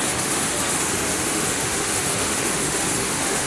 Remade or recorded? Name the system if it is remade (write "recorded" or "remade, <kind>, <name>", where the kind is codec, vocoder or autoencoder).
remade, autoencoder, DAC-VAE